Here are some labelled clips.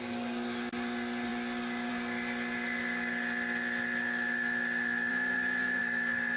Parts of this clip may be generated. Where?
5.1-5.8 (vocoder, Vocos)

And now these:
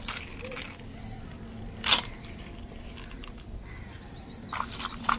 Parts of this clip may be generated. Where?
1.9-5.2 (vocoder, BigVGAN v2)

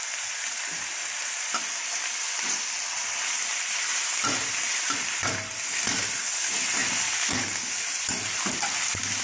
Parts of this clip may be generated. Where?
none

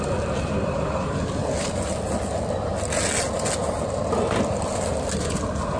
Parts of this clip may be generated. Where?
none